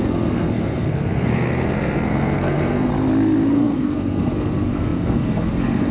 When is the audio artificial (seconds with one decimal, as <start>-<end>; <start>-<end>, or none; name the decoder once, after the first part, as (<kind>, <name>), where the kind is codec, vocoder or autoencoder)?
0.0-2.9 (codec, SNAC); 3.5-5.9